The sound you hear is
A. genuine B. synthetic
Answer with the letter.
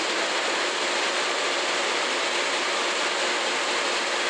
A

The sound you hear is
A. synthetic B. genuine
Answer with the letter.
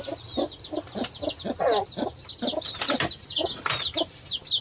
B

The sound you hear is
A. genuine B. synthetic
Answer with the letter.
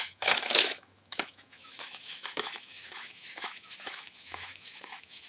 B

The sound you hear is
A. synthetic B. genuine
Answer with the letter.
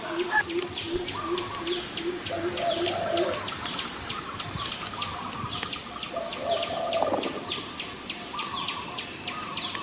B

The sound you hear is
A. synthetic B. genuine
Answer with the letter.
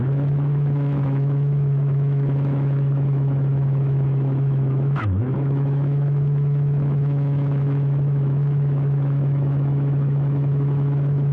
A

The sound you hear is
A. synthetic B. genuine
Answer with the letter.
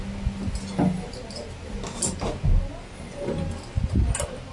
B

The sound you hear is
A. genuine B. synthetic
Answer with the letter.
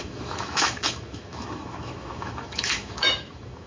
B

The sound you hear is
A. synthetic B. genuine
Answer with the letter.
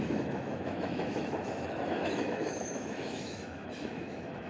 A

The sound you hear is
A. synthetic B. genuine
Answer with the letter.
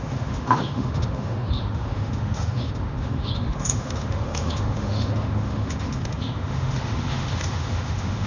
A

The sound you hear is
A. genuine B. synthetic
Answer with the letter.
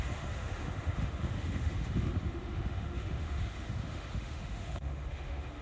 B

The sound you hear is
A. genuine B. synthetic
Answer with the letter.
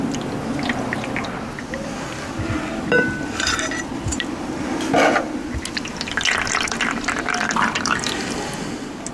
A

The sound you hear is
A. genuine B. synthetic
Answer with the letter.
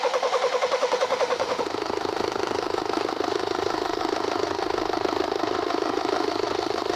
B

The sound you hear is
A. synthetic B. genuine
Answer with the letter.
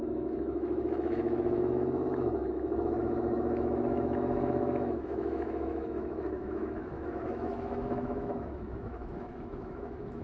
A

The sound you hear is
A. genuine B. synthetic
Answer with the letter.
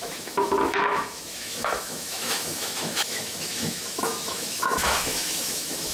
B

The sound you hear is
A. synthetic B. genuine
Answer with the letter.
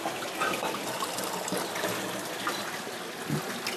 B